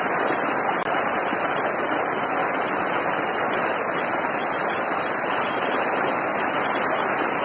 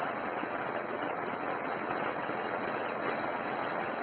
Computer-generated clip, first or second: second